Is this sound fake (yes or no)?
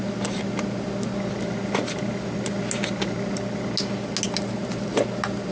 no